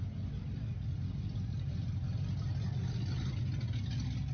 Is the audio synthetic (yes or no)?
no